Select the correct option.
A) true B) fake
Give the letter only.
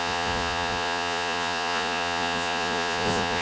B